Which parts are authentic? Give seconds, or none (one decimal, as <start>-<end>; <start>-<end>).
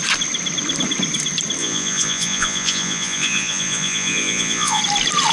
0.0-1.6; 4.8-5.3